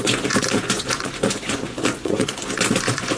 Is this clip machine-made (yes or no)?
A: yes